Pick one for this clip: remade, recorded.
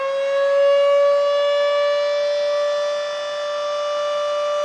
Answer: recorded